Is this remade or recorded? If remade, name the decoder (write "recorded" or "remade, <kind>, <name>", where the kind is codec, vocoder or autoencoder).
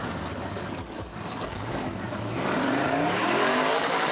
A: remade, codec, DAC